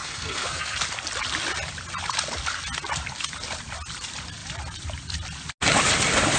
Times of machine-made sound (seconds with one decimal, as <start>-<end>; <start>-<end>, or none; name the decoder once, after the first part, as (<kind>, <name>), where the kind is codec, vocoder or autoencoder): 0.0-0.8 (codec, SNAC)